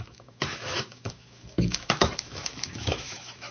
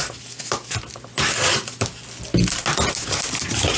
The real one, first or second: second